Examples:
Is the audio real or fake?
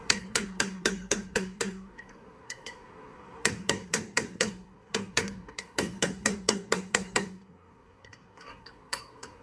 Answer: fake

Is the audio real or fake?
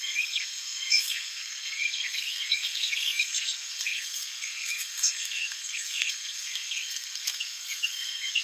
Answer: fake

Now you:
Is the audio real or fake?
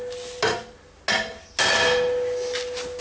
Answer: real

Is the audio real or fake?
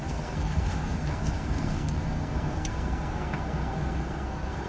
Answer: fake